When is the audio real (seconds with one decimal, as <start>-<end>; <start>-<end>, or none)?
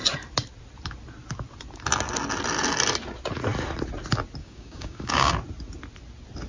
0.0-4.4; 5.3-6.5